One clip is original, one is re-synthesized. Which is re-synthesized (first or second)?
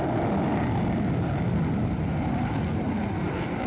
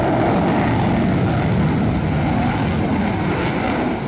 first